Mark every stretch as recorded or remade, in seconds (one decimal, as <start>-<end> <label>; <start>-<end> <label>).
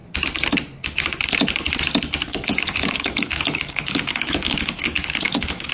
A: 0.0-2.3 recorded; 2.3-5.7 remade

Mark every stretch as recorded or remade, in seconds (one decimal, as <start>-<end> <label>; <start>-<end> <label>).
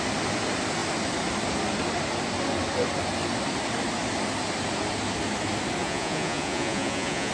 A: 0.0-5.8 recorded; 5.8-7.3 remade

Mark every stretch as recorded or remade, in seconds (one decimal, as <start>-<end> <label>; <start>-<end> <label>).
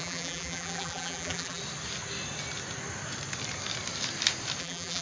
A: 0.0-1.6 remade; 1.6-4.6 recorded; 4.6-5.0 remade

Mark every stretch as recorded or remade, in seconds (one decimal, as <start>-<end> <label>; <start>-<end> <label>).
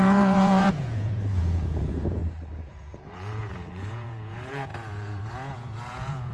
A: 0.0-2.2 remade; 2.2-2.7 recorded; 2.7-6.3 remade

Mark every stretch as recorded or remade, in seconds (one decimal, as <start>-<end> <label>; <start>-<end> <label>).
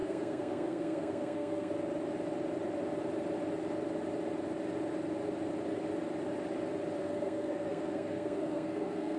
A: 0.0-1.7 remade; 1.7-7.0 recorded; 7.0-9.2 remade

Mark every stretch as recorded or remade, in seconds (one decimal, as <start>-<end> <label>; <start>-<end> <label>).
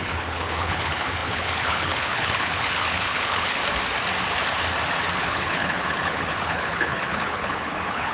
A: 0.0-3.6 remade; 3.6-5.2 recorded; 5.2-8.1 remade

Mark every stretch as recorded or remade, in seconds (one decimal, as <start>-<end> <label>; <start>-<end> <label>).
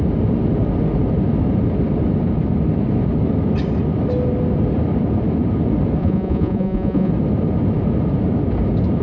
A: 0.0-6.0 recorded; 6.0-7.1 remade; 7.1-9.0 recorded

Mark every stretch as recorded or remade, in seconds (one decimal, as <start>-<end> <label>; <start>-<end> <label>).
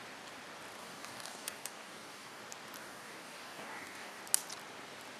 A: 0.0-0.8 recorded; 0.8-2.4 remade; 2.4-2.8 recorded; 2.8-4.2 remade; 4.2-5.2 recorded